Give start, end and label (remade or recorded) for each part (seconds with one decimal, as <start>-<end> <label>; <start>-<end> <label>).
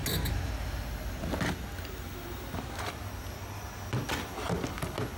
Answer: 0.0-5.2 recorded